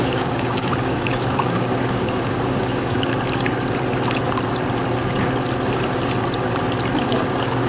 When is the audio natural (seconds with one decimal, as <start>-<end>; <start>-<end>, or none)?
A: 3.1-7.0